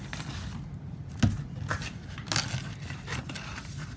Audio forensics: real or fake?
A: real